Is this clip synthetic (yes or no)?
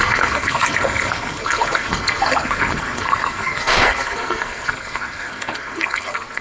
yes